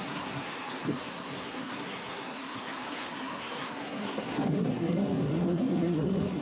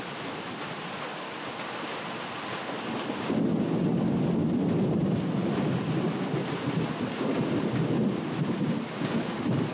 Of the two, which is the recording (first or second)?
second